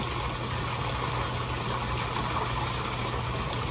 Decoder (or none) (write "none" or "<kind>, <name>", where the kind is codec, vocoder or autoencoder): none